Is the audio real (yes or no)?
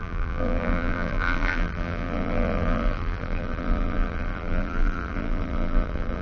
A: no